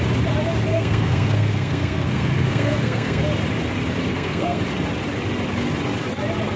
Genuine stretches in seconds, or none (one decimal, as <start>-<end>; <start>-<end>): 0.0-0.7; 3.2-4.1; 4.6-6.6